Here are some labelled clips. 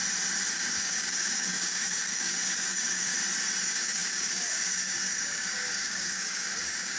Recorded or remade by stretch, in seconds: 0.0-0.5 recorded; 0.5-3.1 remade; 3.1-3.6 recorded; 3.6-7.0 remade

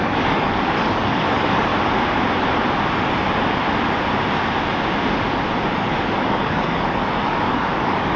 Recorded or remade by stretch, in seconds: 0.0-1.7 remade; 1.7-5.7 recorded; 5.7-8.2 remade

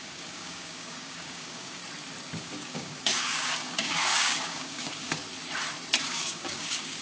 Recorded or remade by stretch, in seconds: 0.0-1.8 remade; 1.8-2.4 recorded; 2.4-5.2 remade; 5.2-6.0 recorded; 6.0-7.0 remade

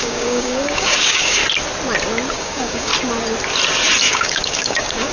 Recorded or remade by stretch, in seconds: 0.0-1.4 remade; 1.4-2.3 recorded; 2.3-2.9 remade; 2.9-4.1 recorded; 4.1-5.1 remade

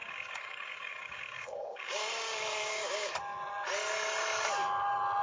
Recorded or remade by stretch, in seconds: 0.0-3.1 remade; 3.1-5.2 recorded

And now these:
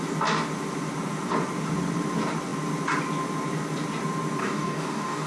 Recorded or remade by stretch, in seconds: 0.0-4.4 recorded; 4.4-5.3 remade

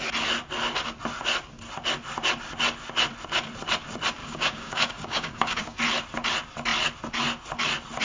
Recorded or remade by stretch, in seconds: 0.0-4.2 recorded; 4.2-5.8 remade; 5.8-8.0 recorded

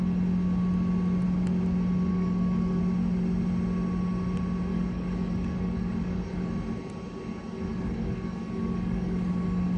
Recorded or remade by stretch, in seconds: 0.0-2.1 recorded; 2.1-2.8 remade; 2.8-4.7 recorded; 4.7-6.5 remade; 6.5-7.7 recorded; 7.7-9.3 remade; 9.3-9.8 recorded